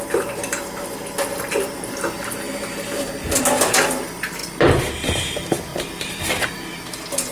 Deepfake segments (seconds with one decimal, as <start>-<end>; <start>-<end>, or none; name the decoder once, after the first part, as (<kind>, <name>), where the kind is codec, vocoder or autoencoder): none